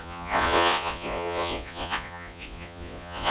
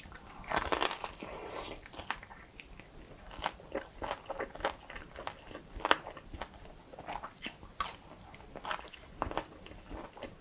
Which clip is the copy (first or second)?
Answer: first